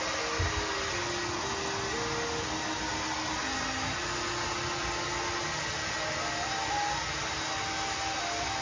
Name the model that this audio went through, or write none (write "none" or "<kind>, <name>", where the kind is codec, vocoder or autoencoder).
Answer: none